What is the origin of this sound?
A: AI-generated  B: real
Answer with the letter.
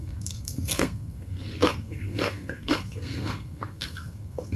A